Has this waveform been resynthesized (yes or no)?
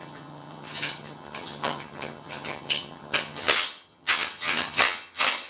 yes